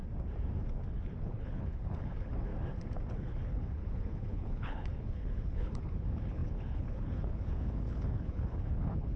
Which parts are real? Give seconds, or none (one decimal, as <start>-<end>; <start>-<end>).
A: 0.0-0.9; 2.5-3.1